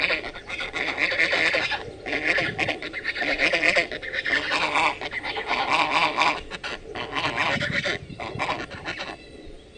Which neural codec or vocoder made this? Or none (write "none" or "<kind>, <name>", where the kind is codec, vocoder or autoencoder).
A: none